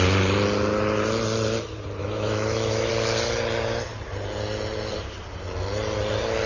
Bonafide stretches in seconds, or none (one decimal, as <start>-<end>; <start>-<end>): 0.0-2.0; 2.9-6.5